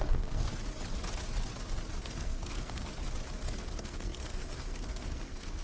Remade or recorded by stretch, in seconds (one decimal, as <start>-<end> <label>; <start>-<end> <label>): 0.0-0.5 remade; 0.5-2.0 recorded; 2.0-2.9 remade; 2.9-3.6 recorded; 3.6-5.6 remade

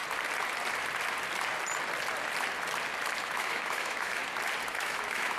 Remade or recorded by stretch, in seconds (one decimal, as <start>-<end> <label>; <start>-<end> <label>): 0.0-3.2 recorded; 3.2-4.2 remade; 4.2-4.7 recorded; 4.7-5.4 remade

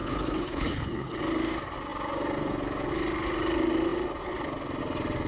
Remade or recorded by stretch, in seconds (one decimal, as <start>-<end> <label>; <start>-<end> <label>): 0.0-1.2 remade; 1.2-5.3 recorded